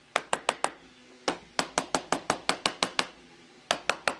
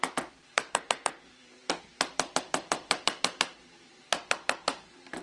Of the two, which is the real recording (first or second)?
first